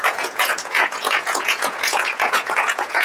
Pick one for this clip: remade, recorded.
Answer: remade